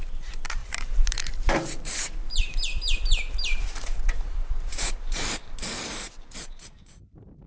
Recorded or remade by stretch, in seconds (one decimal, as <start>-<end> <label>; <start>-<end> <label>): 0.0-7.5 remade